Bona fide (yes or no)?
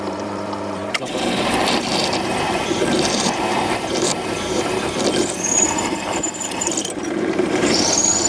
no